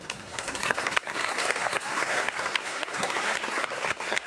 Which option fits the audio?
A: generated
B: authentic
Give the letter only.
A